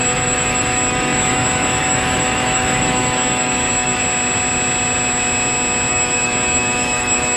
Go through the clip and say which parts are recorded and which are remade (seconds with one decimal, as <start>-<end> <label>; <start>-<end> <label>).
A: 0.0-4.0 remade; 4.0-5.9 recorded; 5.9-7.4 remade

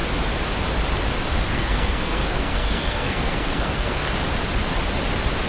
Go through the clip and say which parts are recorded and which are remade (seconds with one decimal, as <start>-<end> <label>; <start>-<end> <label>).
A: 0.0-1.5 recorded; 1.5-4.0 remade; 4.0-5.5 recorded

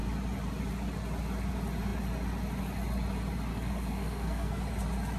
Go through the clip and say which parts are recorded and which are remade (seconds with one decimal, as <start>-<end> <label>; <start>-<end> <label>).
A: 0.0-3.5 recorded; 3.5-4.6 remade; 4.6-5.2 recorded